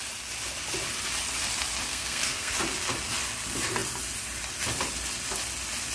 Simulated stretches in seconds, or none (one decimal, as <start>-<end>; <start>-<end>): 1.9-2.5